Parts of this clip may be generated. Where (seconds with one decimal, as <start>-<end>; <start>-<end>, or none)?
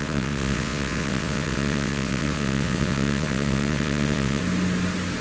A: 0.0-4.4